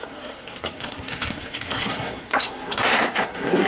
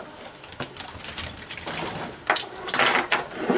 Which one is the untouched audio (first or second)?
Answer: second